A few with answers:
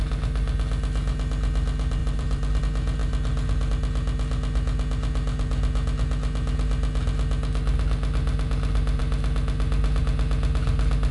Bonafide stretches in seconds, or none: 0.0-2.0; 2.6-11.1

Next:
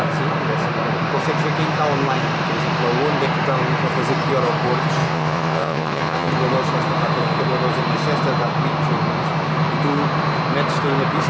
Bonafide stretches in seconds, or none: 0.0-5.0; 6.3-11.3

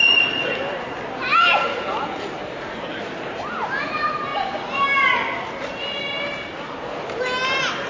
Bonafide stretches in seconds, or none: 0.0-1.3; 2.3-7.9

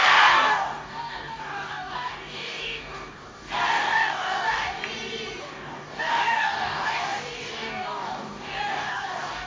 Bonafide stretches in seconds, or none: 4.8-5.4

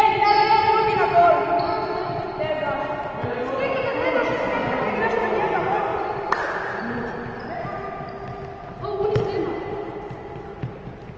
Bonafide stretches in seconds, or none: 0.0-5.9; 6.8-11.2

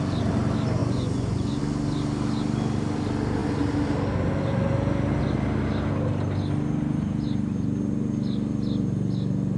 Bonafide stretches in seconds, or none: 0.0-0.8; 1.6-9.6

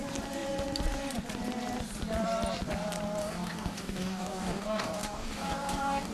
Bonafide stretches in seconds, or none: 0.0-3.2

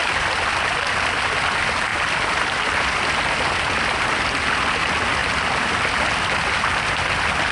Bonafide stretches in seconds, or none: 0.0-7.5